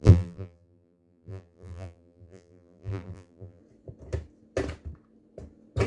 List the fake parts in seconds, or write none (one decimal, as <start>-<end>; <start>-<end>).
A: 0.0-3.6